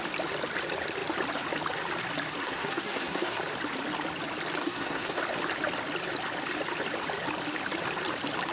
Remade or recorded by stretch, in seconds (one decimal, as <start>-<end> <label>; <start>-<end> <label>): 0.0-2.4 recorded; 2.4-3.4 remade; 3.4-4.6 recorded; 4.6-5.2 remade; 5.2-8.5 recorded